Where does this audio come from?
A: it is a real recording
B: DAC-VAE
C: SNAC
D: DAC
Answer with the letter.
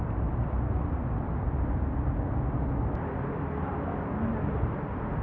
A